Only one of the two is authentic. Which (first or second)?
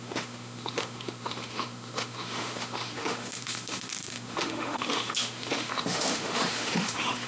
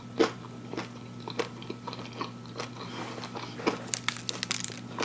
second